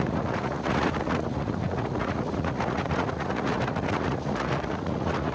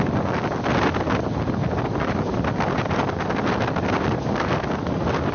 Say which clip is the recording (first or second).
second